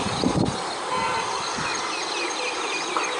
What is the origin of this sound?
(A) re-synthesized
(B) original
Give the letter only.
B